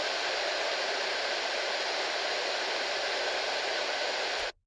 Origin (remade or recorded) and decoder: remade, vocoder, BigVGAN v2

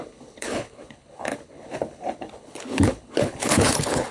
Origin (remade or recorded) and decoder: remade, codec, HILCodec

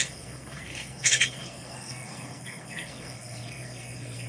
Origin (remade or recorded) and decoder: remade, codec, SNAC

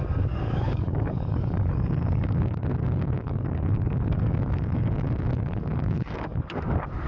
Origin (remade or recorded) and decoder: remade, codec, DAC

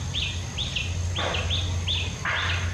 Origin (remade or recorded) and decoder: recorded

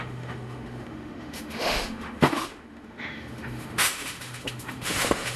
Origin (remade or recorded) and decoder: remade, autoencoder, DAC-VAE